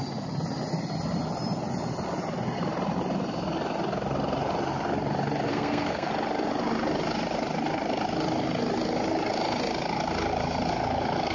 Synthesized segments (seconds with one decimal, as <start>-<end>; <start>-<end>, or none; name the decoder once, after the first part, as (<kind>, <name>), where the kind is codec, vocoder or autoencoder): 5.5-6.1 (codec, SNAC)